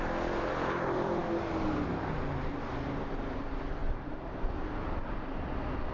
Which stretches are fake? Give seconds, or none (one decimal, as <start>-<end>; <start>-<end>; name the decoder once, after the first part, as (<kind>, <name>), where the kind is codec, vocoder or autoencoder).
0.0-1.2 (vocoder, BigVGAN v2); 3.1-5.9